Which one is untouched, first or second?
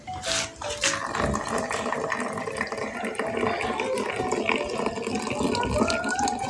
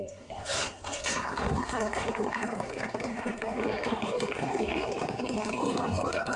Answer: first